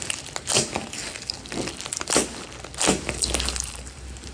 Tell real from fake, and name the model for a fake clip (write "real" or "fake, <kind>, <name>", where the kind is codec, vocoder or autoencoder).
real